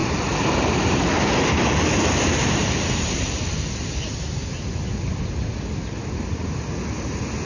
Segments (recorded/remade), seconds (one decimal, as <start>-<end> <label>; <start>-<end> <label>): 0.0-4.4 remade; 4.4-7.5 recorded